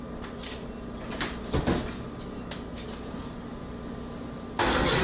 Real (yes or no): yes